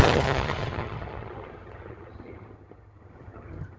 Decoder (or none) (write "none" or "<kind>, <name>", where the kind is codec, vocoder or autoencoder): vocoder, HiFi-GAN